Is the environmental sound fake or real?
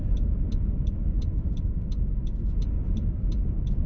real